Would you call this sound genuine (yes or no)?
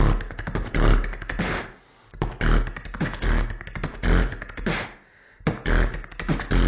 yes